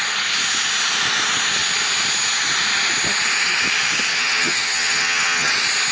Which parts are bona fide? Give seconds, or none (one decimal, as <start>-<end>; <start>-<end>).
0.0-4.1; 5.5-5.9